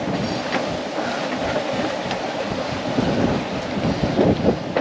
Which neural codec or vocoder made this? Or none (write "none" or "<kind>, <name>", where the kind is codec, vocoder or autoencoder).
none